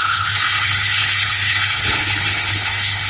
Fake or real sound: fake